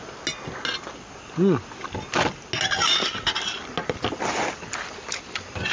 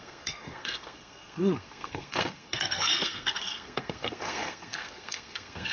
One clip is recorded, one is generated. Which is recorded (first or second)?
first